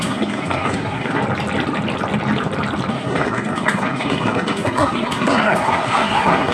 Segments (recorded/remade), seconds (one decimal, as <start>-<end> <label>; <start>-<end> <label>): 0.0-1.2 remade; 1.2-2.9 recorded; 2.9-6.5 remade